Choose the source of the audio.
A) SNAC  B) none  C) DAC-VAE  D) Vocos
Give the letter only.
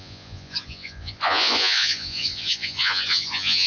D